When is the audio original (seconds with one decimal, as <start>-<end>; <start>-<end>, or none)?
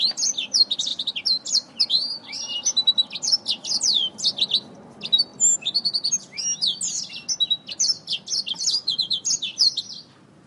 0.0-10.5